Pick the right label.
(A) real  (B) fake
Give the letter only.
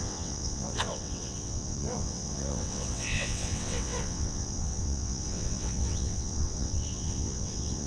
B